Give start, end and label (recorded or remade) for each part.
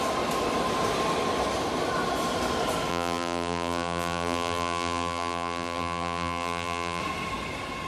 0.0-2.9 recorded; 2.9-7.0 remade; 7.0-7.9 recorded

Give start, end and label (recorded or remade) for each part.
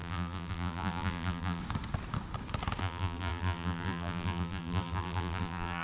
0.0-1.6 remade; 1.6-2.8 recorded; 2.8-5.8 remade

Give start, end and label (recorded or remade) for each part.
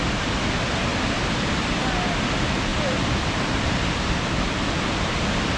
0.0-2.7 recorded; 2.7-4.3 remade; 4.3-5.6 recorded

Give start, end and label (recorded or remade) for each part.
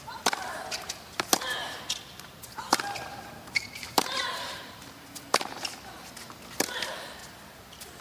0.0-3.1 recorded; 3.1-5.7 remade; 5.7-7.2 recorded; 7.2-8.0 remade